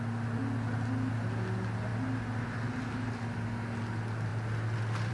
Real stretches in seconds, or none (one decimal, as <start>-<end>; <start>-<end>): 0.0-5.1